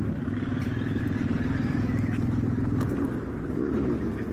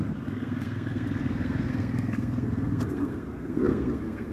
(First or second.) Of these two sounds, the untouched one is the first